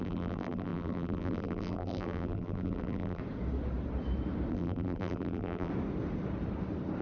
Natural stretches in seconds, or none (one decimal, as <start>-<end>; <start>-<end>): 3.2-4.5; 5.7-7.0